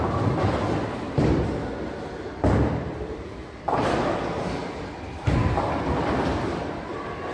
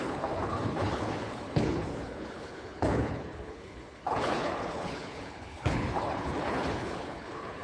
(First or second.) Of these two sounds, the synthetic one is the second